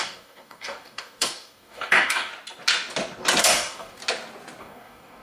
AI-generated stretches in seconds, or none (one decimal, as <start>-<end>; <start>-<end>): 0.0-2.3; 3.4-4.0; 4.6-5.2